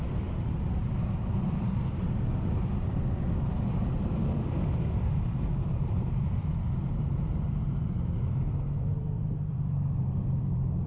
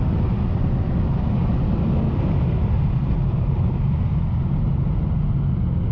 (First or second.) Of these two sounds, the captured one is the second